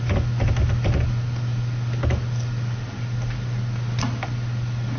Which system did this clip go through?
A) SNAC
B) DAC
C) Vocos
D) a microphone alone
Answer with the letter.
D